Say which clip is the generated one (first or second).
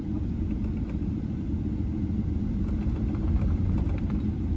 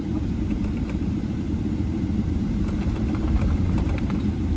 second